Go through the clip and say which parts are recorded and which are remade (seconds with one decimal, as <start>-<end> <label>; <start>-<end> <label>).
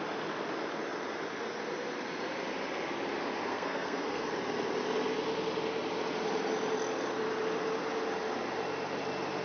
0.0-3.5 recorded; 3.5-4.3 remade; 4.3-9.4 recorded